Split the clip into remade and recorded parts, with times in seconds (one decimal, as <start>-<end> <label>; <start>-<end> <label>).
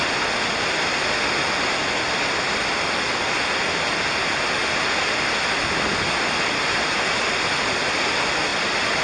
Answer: 0.0-9.0 recorded